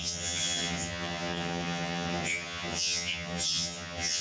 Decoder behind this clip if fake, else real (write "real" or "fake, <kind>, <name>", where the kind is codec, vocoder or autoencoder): fake, vocoder, HiFi-GAN